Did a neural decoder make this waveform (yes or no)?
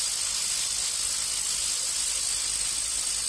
no